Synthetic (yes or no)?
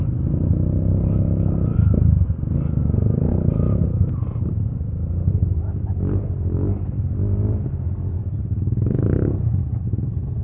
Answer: no